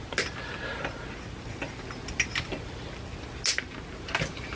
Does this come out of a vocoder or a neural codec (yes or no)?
no